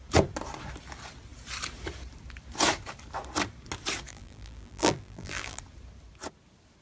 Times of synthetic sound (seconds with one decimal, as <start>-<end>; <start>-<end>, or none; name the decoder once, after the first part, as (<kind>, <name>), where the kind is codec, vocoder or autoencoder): 4.1-5.6 (vocoder, BigVGAN v2)